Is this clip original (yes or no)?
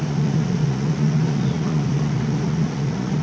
no